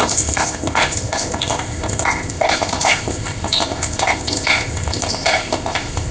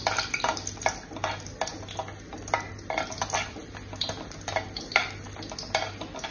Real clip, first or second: second